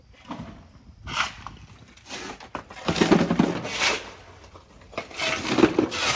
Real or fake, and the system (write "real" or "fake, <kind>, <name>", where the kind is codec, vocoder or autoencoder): real